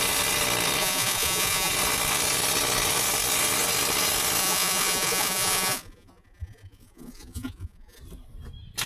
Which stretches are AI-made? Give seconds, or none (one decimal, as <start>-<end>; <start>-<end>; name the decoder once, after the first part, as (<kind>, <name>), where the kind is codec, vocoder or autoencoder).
0.8-1.7 (vocoder, Vocos); 4.4-8.0